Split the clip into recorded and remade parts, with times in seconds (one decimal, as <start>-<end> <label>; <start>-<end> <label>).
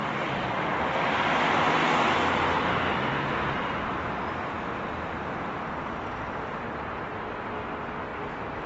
0.0-8.7 recorded